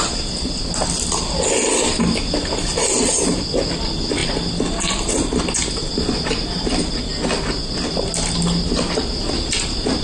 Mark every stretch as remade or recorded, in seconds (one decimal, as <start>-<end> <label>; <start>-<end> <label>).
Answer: 0.0-4.2 recorded; 4.2-5.1 remade; 5.1-10.0 recorded